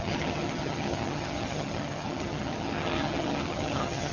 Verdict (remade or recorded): remade